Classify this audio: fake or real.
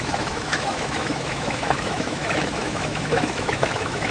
fake